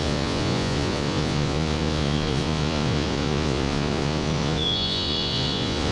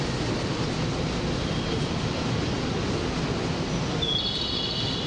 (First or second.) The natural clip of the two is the second